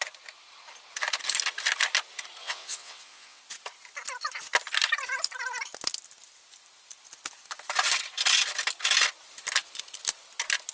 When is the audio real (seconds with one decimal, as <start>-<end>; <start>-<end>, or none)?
0.0-2.4; 3.4-10.7

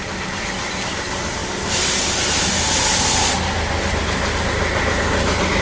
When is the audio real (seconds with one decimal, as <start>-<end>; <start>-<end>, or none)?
0.0-5.6

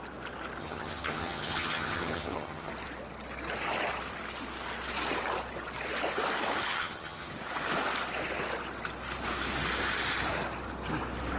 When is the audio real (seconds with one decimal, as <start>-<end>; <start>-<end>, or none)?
0.0-0.6; 2.7-6.7; 7.3-11.4

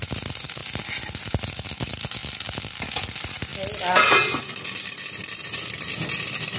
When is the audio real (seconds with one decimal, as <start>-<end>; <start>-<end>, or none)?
0.0-6.6